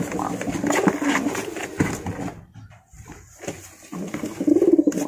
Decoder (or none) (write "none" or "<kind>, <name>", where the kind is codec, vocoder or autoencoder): none